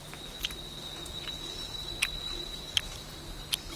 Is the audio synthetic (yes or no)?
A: no